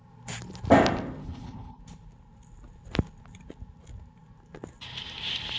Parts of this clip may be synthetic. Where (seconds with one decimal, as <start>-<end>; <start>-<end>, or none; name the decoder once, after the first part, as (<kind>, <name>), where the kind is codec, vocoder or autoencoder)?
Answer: 1.2-1.8 (codec, HILCodec)